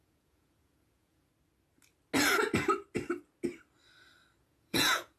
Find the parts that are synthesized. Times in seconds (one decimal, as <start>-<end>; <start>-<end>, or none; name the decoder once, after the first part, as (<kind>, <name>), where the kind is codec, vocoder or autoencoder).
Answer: 0.0-1.3 (vocoder, Vocos); 4.4-5.2